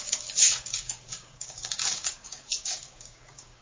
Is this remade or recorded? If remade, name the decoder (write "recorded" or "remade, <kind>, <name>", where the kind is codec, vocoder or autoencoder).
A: remade, codec, DAC